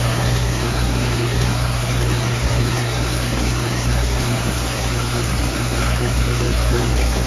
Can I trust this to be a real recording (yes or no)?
no